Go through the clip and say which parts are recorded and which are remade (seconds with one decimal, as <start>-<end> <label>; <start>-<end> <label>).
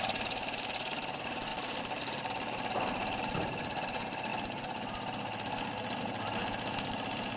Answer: 0.0-4.3 remade; 4.3-6.0 recorded; 6.0-7.4 remade